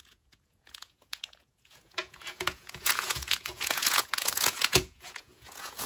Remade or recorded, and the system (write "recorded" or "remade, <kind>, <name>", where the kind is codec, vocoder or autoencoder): remade, vocoder, Vocos